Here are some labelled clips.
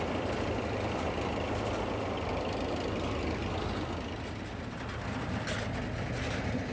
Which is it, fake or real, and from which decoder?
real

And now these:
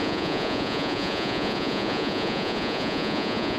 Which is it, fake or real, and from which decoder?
fake, vocoder, Vocos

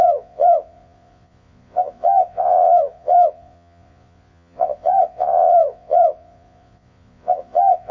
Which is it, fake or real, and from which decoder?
fake, vocoder, Vocos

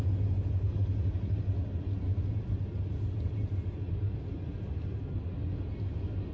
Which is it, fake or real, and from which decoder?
real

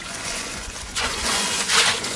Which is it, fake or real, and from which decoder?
fake, vocoder, Vocos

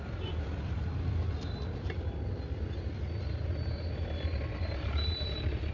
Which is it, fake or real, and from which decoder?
real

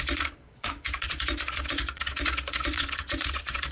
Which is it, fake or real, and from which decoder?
fake, vocoder, Vocos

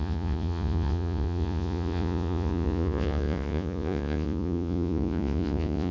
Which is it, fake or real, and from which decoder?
fake, vocoder, Vocos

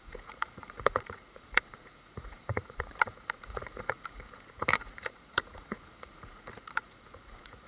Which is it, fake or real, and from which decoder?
fake, vocoder, Vocos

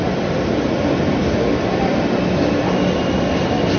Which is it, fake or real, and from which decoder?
real